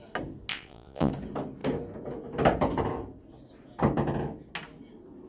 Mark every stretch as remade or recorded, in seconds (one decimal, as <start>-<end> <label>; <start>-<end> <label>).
0.0-0.5 recorded; 0.5-1.1 remade; 1.1-5.3 recorded